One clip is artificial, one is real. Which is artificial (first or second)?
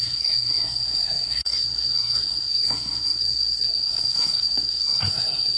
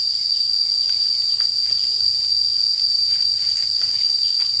first